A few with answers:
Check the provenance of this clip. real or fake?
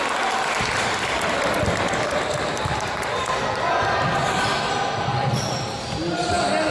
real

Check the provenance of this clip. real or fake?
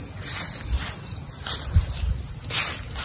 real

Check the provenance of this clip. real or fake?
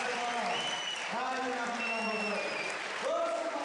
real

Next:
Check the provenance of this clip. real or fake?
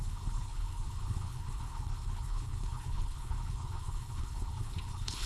fake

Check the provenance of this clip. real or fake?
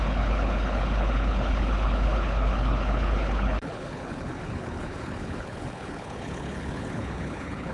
fake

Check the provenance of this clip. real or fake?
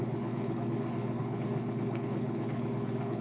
fake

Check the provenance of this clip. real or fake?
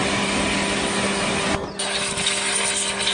real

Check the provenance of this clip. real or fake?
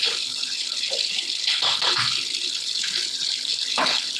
fake